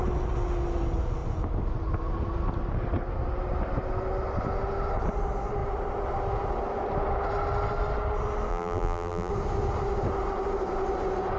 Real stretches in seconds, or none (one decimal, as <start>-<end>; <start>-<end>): 0.0-8.5; 9.3-11.4